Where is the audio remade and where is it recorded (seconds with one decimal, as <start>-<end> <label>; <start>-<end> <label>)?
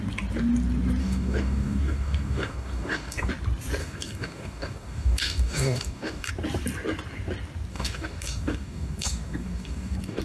0.0-1.0 recorded; 1.0-3.3 remade; 3.3-3.8 recorded; 3.8-6.3 remade; 6.3-7.7 recorded; 7.7-10.2 remade